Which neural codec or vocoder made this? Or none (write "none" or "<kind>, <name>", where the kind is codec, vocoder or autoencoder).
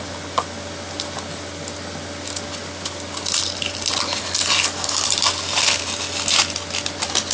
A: none